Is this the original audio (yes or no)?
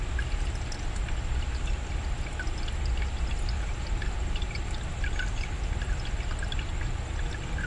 yes